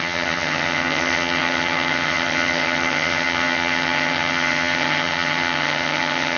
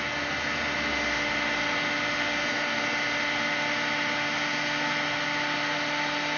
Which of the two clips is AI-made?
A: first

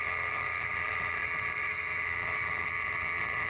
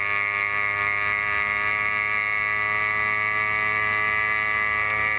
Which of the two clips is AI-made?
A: first